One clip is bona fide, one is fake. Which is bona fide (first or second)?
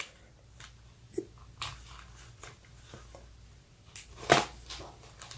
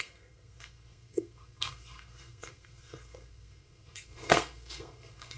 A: first